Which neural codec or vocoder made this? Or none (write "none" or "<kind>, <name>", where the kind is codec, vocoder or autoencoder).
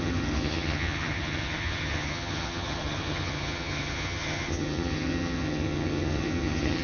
vocoder, HiFi-GAN